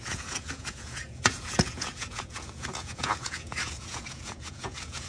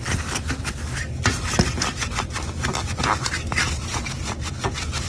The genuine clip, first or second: second